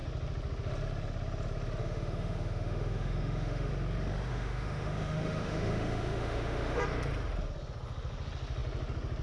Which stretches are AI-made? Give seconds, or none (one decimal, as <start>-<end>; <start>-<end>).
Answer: 1.8-3.7; 4.3-6.8